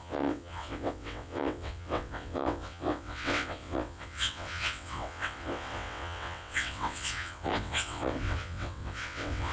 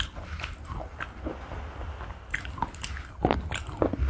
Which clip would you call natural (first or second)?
second